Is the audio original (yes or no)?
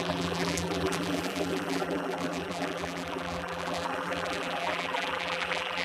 no